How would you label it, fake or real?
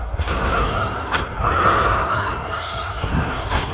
fake